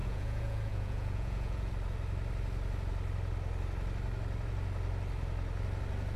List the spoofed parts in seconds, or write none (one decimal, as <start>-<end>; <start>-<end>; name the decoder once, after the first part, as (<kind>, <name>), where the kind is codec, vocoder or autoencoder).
0.0-1.7 (vocoder, Vocos)